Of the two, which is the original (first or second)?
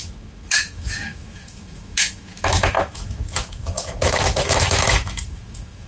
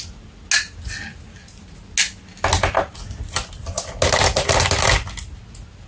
second